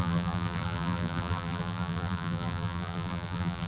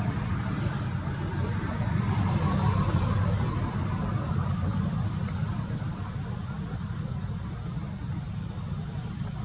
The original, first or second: second